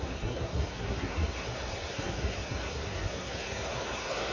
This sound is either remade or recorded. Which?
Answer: remade